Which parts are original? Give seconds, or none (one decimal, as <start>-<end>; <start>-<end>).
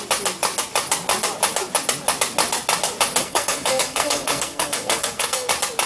0.0-3.2; 5.5-5.9